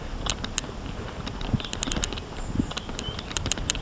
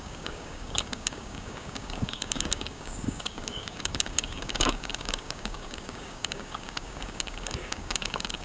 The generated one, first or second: second